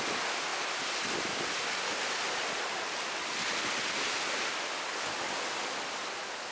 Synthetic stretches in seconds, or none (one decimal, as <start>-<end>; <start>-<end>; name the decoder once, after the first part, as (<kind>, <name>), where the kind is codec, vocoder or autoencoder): none